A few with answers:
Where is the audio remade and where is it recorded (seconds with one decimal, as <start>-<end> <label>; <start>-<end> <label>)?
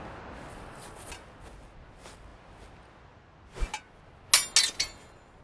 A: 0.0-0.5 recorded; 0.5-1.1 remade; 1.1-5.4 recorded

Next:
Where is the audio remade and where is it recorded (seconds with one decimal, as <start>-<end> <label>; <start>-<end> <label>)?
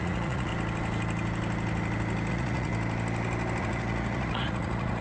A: 0.0-0.5 remade; 0.5-2.3 recorded; 2.3-2.7 remade; 2.7-3.6 recorded; 3.6-5.0 remade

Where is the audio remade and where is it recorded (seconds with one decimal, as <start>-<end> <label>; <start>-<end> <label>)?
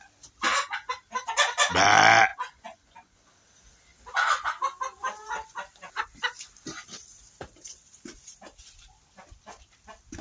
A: 0.0-2.3 recorded; 2.3-3.3 remade; 3.3-10.2 recorded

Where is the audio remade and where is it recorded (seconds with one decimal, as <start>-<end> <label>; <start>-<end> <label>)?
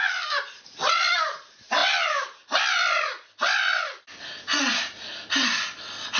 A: 0.0-6.2 recorded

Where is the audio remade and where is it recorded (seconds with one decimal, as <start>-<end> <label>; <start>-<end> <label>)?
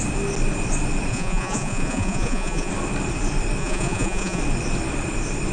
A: 0.0-1.1 recorded; 1.1-2.7 remade; 2.7-3.6 recorded; 3.6-4.4 remade; 4.4-5.5 recorded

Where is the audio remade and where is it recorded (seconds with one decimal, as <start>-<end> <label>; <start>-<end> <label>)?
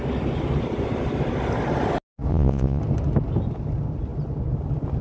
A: 0.0-2.3 recorded; 2.3-2.8 remade; 2.8-5.0 recorded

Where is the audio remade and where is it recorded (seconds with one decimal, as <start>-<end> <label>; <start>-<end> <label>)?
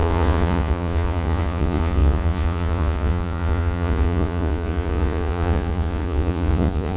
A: 0.0-7.0 remade